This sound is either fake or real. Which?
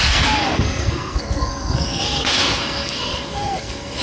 fake